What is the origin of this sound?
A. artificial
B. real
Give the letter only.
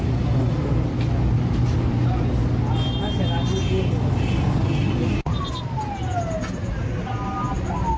B